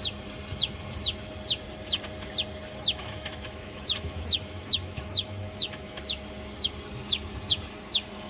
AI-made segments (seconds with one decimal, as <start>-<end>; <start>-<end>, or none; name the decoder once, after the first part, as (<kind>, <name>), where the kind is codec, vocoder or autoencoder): 2.7-6.0 (autoencoder, DAC-VAE)